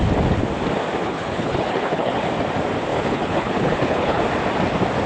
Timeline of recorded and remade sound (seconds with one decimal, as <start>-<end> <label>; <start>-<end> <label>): 0.0-1.0 recorded; 1.0-2.2 remade; 2.2-2.9 recorded; 2.9-4.2 remade; 4.2-5.1 recorded